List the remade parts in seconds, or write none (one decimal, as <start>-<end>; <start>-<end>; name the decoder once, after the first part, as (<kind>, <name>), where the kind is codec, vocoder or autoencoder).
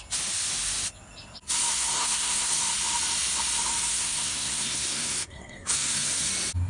1.7-2.6 (codec, SNAC); 3.9-6.3